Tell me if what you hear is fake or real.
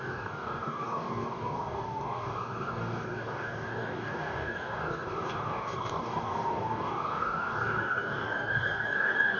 fake